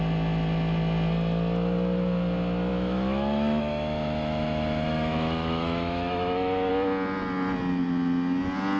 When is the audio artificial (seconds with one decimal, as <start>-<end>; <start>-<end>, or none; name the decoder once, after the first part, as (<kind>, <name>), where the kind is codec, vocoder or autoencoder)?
2.7-6.7 (autoencoder, DAC-VAE)